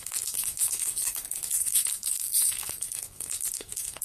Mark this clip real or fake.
fake